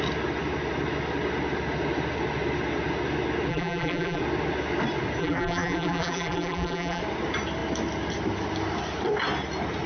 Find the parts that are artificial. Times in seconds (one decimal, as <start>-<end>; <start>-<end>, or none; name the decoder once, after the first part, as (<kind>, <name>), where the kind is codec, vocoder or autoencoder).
3.5-4.2 (vocoder, BigVGAN v2); 5.2-7.0